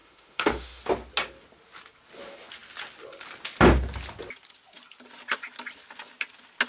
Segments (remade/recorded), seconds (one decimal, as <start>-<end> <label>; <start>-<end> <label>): 0.0-0.8 remade; 0.8-6.7 recorded

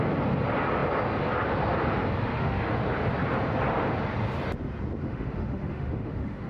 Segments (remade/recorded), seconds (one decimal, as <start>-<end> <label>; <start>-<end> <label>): 0.0-2.3 recorded; 2.3-2.8 remade; 2.8-5.0 recorded; 5.0-6.5 remade

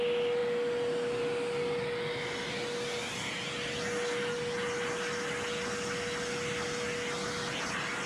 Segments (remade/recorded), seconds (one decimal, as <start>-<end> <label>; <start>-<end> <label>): 0.0-8.1 recorded